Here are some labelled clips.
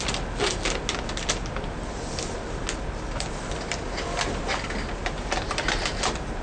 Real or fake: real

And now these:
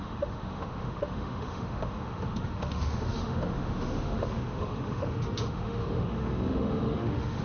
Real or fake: fake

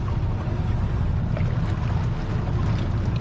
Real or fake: real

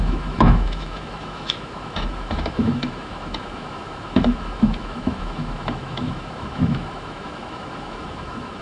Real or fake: fake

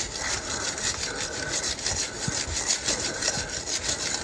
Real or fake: real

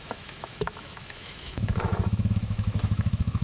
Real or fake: fake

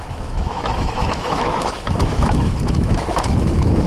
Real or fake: fake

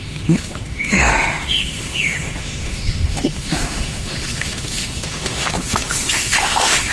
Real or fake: fake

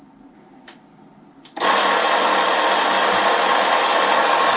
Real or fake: real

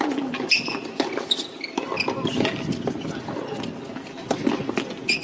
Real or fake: real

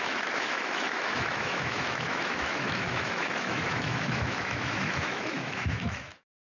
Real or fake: fake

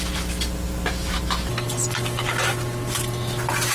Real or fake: real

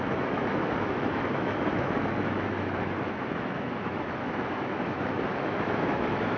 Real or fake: fake